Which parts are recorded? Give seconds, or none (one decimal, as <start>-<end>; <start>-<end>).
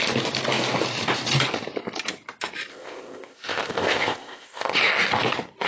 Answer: 0.0-2.7; 4.7-5.7